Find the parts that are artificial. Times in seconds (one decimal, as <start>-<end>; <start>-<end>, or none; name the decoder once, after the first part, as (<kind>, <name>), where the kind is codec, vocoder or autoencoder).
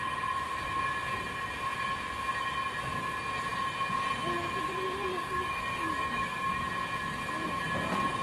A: 5.1-6.6 (codec, DAC)